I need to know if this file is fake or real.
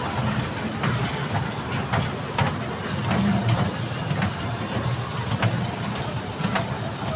real